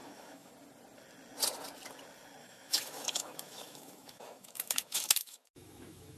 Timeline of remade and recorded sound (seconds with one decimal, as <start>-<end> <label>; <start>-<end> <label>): 0.0-0.5 remade; 0.5-2.4 recorded; 2.4-6.2 remade